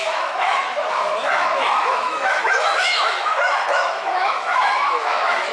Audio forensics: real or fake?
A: fake